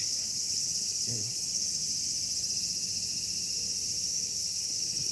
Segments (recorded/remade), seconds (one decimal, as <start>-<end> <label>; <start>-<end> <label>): 0.0-1.8 remade; 1.8-4.1 recorded; 4.1-5.1 remade